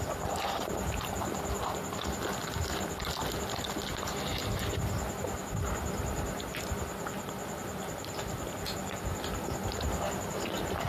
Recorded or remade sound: recorded